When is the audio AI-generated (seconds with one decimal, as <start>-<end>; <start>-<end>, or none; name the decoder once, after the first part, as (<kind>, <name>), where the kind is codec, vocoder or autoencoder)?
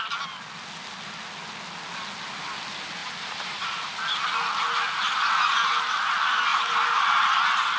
3.0-3.9 (vocoder, BigVGAN v2); 6.5-7.2